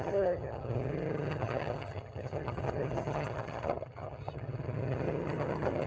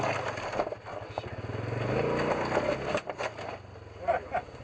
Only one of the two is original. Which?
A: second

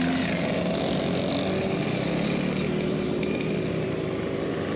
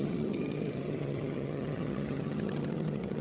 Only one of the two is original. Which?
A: first